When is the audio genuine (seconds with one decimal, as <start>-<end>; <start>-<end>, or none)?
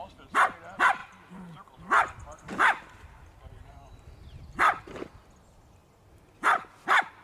0.0-1.0; 5.3-7.2